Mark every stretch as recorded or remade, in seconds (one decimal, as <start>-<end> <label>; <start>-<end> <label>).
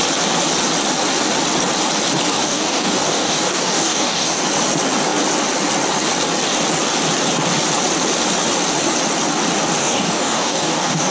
0.0-2.3 recorded; 2.3-4.4 remade; 4.4-9.8 recorded; 9.8-11.1 remade